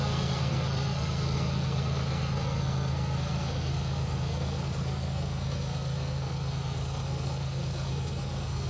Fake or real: fake